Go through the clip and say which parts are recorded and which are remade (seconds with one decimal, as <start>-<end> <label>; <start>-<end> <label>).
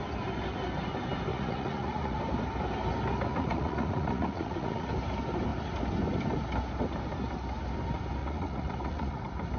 0.0-1.3 recorded; 1.3-2.2 remade; 2.2-3.3 recorded; 3.3-4.9 remade; 4.9-8.2 recorded; 8.2-9.2 remade; 9.2-9.6 recorded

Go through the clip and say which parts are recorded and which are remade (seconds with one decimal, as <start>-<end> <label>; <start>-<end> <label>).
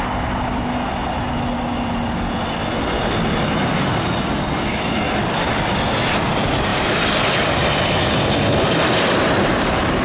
0.0-10.0 recorded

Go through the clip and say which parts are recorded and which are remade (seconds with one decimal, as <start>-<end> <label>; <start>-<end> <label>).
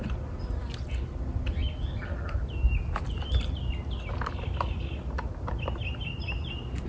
0.0-6.9 recorded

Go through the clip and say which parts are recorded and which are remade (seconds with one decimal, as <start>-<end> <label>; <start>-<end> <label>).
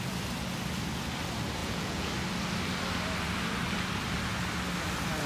0.0-1.6 recorded; 1.6-2.1 remade; 2.1-5.3 recorded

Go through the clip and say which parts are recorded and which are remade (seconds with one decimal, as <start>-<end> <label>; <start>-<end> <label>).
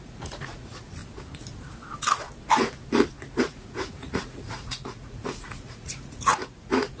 0.0-1.0 remade; 1.0-3.4 recorded; 3.4-7.0 remade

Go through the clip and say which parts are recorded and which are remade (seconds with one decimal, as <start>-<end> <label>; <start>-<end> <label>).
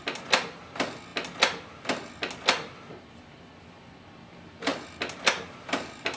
0.0-6.2 recorded